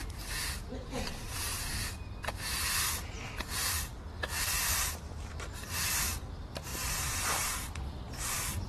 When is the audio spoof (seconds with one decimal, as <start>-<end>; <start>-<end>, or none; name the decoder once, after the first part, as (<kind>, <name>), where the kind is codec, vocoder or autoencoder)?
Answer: 0.0-1.5 (vocoder, BigVGAN v2); 2.3-3.9; 4.7-6.7; 8.2-8.7